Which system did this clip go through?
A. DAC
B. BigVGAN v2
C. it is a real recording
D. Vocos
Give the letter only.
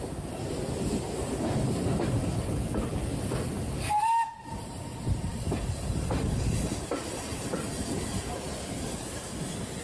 C